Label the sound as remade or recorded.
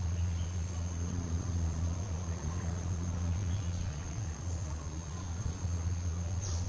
remade